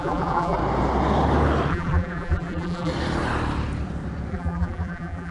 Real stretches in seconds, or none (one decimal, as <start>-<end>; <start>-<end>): 0.6-1.7; 2.9-4.3